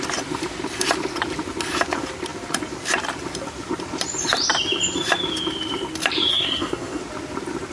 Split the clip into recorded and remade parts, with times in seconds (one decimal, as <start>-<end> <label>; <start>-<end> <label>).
0.0-6.3 recorded; 6.3-7.0 remade; 7.0-7.7 recorded